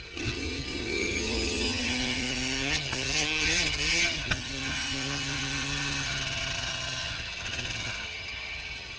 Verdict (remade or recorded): remade